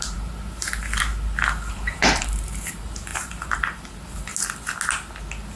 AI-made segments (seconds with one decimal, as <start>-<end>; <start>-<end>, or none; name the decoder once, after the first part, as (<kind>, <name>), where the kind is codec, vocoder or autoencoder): 0.0-1.1 (vocoder, BigVGAN v2); 1.7-4.3